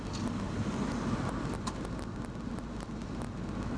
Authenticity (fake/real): real